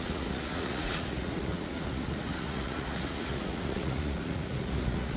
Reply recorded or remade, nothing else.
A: remade